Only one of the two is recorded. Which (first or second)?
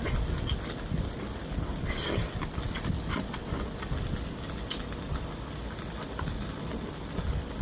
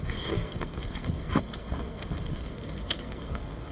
first